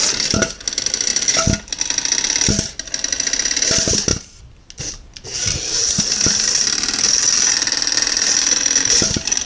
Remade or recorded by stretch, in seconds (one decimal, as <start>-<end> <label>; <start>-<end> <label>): 0.0-9.5 recorded